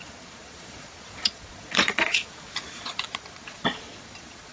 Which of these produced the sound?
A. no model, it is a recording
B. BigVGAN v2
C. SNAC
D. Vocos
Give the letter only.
D